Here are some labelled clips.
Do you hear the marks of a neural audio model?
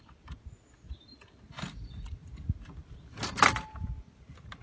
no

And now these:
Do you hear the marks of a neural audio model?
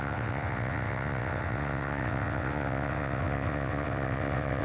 yes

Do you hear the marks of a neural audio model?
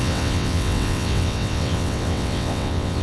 yes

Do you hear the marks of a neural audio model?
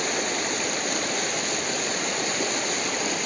no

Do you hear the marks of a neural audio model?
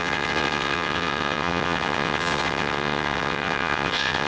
yes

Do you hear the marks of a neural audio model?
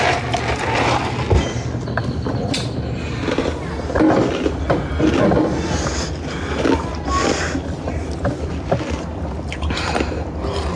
no